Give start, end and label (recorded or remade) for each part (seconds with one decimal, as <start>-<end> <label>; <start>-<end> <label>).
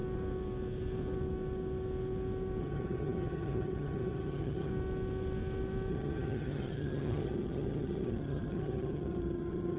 0.0-2.6 recorded; 2.6-4.7 remade; 4.7-5.9 recorded; 5.9-9.8 remade